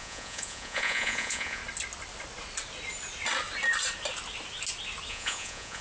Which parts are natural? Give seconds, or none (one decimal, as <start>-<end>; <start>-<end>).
1.6-5.1